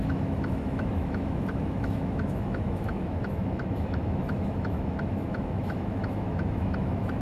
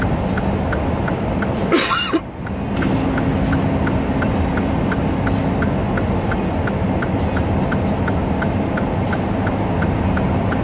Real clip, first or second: second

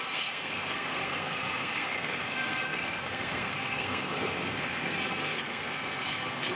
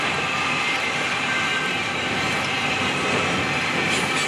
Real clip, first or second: second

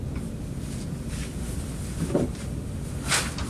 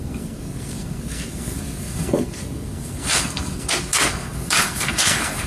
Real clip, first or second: first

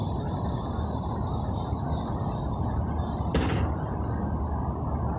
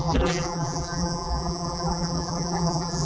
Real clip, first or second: first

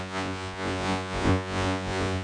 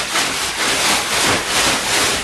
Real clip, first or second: second